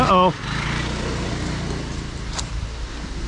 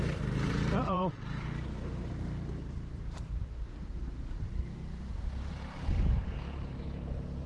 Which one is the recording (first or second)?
first